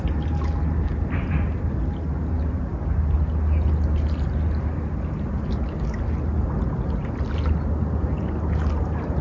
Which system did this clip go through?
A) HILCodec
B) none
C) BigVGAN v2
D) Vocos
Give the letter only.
B